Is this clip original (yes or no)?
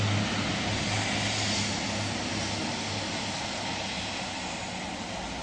yes